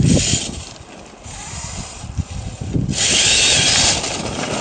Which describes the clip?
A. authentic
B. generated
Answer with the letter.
A